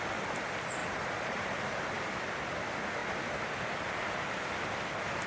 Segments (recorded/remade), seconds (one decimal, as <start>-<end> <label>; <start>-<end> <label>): 0.0-0.8 recorded; 0.8-1.6 remade; 1.6-3.0 recorded; 3.0-4.5 remade; 4.5-5.3 recorded